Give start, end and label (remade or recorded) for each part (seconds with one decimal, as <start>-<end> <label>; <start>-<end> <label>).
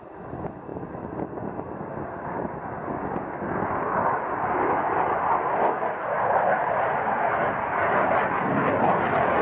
0.0-9.4 recorded